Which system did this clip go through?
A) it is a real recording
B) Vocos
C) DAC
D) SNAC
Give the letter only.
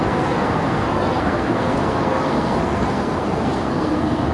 D